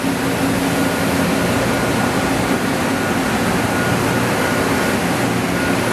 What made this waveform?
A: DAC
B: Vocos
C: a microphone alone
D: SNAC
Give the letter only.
C